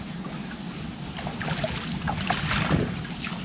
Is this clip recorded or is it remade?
recorded